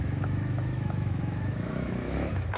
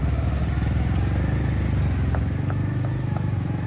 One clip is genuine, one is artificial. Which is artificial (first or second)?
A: first